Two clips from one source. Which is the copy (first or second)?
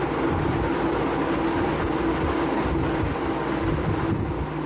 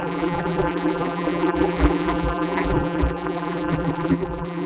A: second